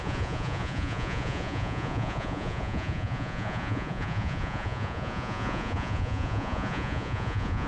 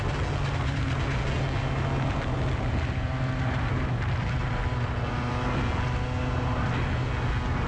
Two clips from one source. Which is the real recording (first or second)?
second